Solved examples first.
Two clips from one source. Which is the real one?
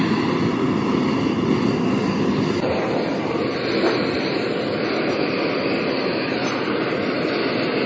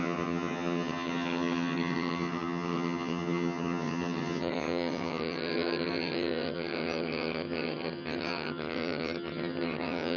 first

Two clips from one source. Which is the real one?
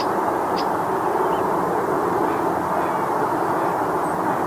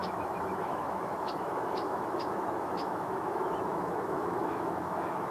first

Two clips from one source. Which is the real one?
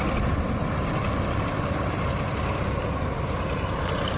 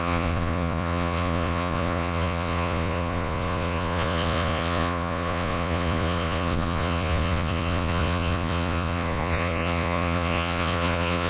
first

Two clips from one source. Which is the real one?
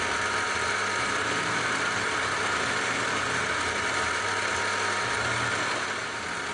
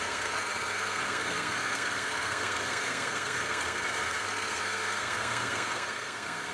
first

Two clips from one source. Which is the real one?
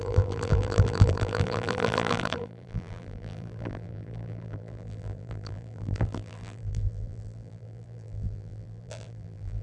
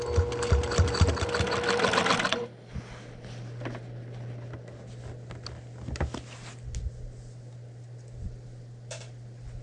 second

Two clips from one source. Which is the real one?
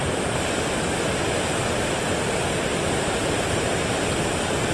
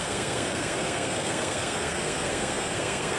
first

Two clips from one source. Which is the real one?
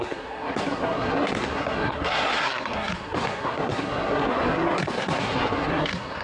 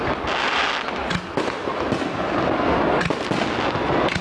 second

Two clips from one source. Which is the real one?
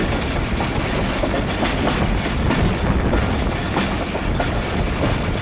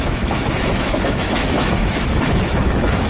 first